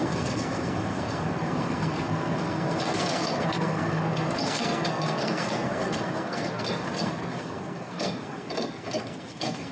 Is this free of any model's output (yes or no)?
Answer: no